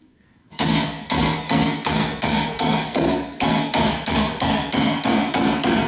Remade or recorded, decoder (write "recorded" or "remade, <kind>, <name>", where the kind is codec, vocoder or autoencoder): remade, codec, SNAC